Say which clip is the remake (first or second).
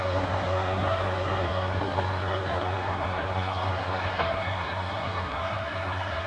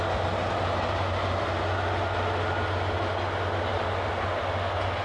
first